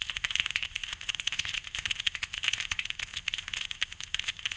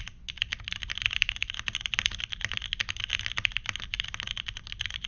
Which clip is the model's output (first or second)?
first